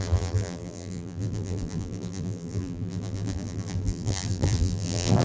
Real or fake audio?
fake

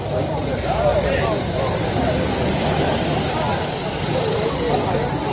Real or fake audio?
real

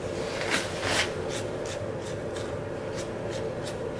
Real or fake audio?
real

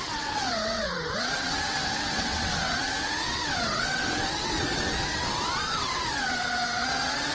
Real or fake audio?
fake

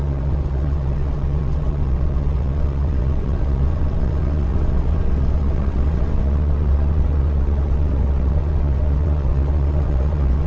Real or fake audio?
fake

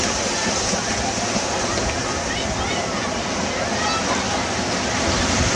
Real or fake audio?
real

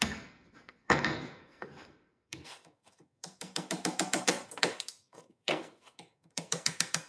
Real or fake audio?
fake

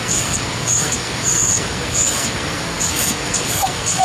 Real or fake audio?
fake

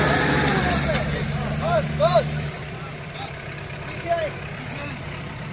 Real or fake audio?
fake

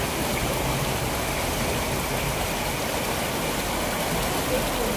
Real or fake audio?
real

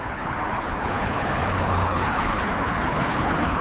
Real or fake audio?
fake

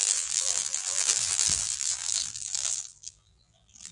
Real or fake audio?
fake